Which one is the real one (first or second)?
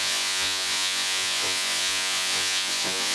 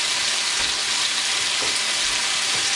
second